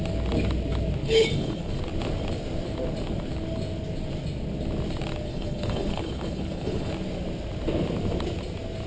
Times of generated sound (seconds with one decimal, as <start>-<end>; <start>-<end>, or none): 1.0-1.8; 5.3-6.9